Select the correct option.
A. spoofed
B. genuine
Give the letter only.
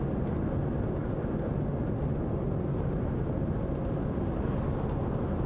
B